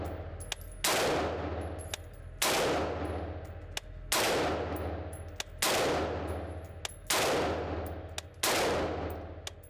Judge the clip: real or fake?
real